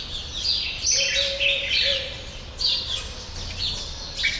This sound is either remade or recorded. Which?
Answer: recorded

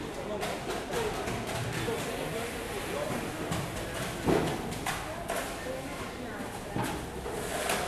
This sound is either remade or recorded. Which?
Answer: recorded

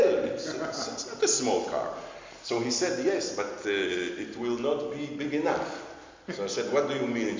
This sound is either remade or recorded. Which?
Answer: recorded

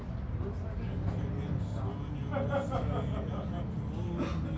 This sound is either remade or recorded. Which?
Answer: recorded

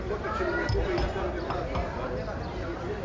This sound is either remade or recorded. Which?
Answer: recorded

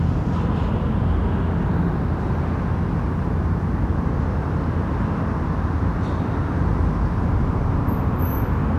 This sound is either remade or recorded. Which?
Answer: recorded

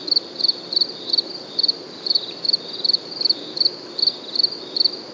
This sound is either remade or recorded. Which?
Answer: recorded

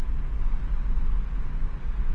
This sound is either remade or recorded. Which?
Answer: recorded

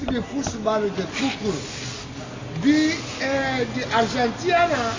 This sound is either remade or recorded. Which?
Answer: recorded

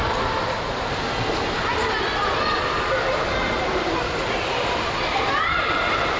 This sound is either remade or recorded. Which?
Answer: recorded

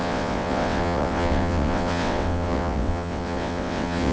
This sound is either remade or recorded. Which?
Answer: remade